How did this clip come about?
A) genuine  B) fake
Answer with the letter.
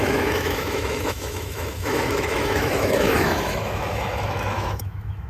B